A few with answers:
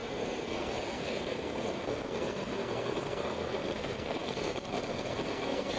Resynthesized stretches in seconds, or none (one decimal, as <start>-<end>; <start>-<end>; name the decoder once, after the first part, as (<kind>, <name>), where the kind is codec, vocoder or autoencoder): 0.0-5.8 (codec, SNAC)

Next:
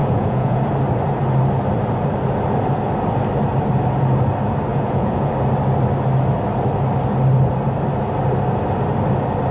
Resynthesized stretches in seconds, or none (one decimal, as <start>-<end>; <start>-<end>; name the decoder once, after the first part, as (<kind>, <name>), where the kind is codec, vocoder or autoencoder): 0.0-0.6 (vocoder, Vocos); 4.7-5.3

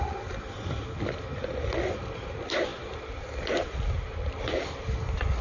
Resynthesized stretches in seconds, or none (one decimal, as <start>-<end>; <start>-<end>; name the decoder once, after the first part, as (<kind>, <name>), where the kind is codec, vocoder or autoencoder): none

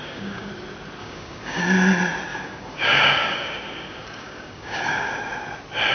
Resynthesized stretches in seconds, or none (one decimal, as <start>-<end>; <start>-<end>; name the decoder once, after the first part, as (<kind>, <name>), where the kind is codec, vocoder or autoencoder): 0.0-0.5 (codec, DAC); 1.0-1.6; 2.3-5.1

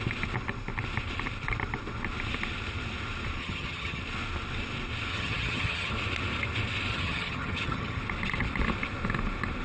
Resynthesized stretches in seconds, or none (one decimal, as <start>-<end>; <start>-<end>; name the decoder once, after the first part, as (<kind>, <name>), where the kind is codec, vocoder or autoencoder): 3.4-4.0 (vocoder, HiFi-GAN); 5.1-5.9; 6.9-8.0